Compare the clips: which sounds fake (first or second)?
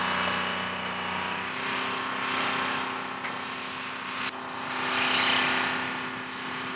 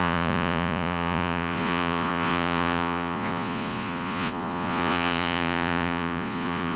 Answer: second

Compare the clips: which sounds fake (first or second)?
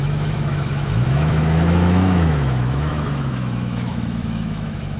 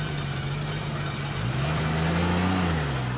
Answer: first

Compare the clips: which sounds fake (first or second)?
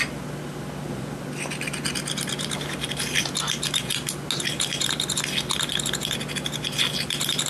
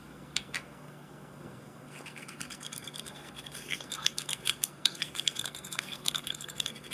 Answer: second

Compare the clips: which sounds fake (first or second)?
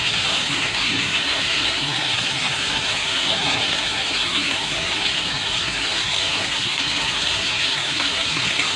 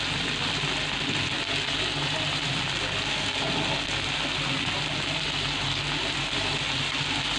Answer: first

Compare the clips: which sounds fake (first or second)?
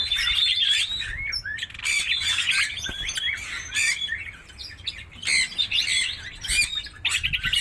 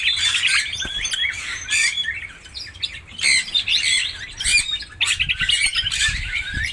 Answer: second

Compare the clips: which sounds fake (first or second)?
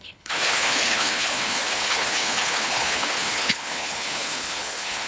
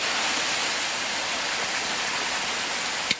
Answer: first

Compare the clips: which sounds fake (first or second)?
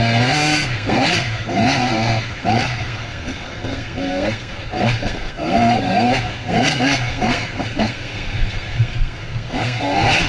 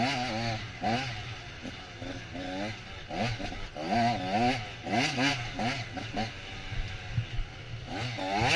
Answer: first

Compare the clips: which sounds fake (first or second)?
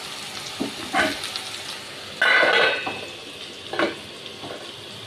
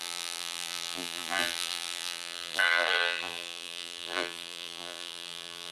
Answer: second